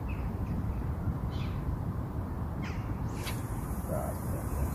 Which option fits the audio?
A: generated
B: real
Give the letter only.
A